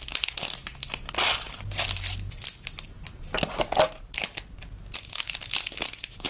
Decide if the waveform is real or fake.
real